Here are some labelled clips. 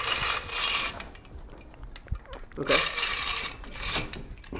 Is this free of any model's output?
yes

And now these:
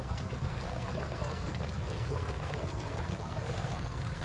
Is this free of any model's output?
no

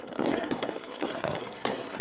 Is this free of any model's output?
no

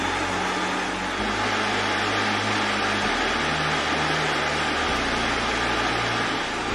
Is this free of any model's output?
yes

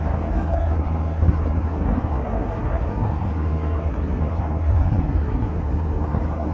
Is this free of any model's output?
no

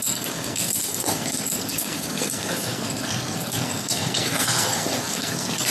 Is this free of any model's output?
no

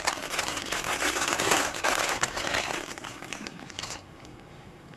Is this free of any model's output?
no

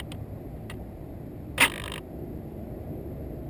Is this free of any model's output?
yes